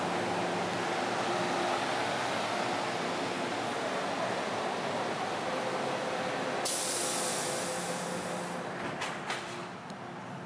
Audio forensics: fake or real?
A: real